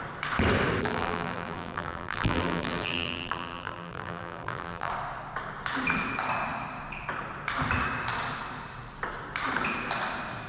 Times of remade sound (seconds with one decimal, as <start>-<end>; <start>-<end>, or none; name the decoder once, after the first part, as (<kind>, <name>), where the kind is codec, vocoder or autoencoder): 0.8-4.9 (vocoder, BigVGAN v2)